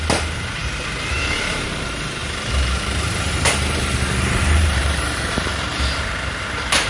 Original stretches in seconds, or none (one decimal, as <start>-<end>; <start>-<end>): 2.2-2.8